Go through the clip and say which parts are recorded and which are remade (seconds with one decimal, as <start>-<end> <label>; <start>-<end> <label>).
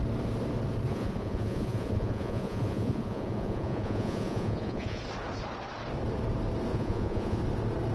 0.0-0.9 recorded; 0.9-5.0 remade; 5.0-6.7 recorded; 6.7-7.4 remade; 7.4-7.9 recorded